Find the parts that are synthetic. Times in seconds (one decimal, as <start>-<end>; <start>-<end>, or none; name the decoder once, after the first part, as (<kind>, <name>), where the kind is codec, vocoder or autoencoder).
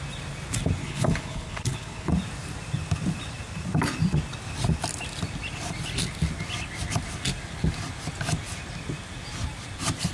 0.8-2.1 (codec, HILCodec)